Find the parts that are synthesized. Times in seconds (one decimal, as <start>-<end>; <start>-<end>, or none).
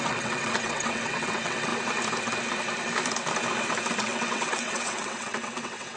0.0-1.7; 4.0-6.0